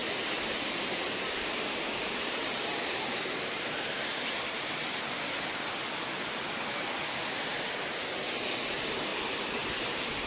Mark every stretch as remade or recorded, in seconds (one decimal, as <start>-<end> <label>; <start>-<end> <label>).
0.0-9.1 recorded; 9.1-9.8 remade; 9.8-10.3 recorded